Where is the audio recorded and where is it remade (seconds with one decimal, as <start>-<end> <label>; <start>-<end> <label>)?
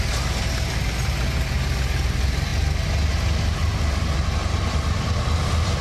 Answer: 0.0-5.8 recorded